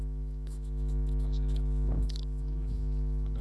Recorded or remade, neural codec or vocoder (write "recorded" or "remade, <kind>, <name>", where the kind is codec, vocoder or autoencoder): remade, autoencoder, DAC-VAE